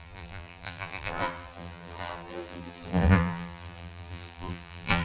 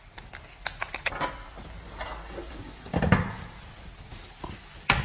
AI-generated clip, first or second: first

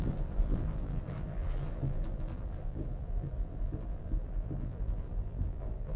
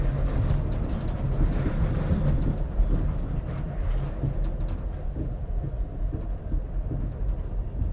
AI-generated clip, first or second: first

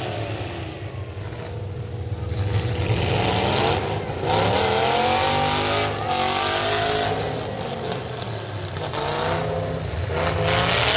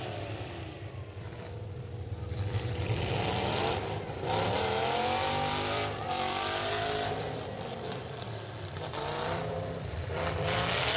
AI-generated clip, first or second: second